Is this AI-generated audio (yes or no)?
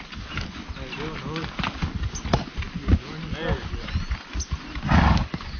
no